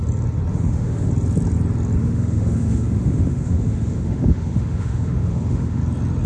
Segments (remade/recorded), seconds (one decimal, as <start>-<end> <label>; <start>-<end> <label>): 0.0-0.5 recorded; 0.5-1.1 remade; 1.1-2.0 recorded; 2.0-5.8 remade; 5.8-6.3 recorded

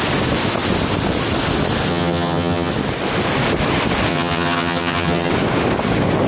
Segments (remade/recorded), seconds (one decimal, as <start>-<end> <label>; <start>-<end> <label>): 0.0-1.9 recorded; 1.9-2.7 remade; 2.7-4.1 recorded; 4.1-5.3 remade; 5.3-6.3 recorded